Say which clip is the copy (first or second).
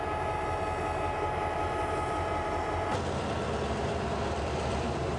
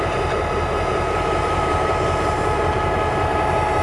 second